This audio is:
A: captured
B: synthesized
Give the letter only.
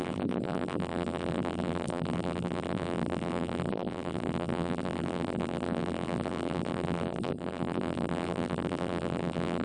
B